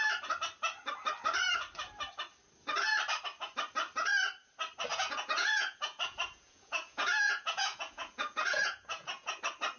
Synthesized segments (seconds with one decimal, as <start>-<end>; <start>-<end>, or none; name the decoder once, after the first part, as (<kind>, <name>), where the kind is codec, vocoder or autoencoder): 4.9-9.4 (vocoder, Vocos)